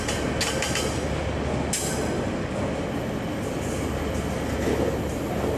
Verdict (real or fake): real